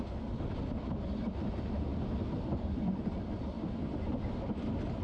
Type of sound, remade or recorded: recorded